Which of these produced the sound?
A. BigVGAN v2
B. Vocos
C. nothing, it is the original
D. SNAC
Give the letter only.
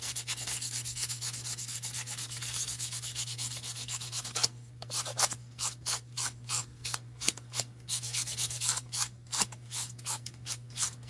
D